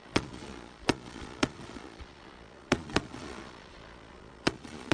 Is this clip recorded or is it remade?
remade